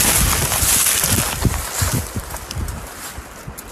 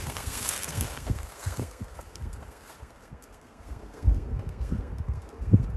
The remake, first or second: second